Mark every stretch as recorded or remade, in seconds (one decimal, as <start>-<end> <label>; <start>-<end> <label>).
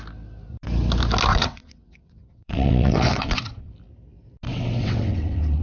0.0-1.3 recorded; 1.3-3.7 remade; 3.7-4.5 recorded; 4.5-5.6 remade